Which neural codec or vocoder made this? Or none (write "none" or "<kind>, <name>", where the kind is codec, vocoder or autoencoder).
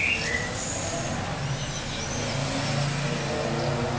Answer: none